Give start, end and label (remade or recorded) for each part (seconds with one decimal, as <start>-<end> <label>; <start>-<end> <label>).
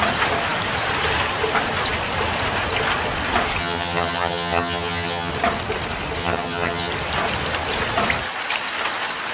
0.0-3.6 recorded; 3.6-5.3 remade; 5.3-6.2 recorded; 6.2-6.9 remade; 6.9-9.3 recorded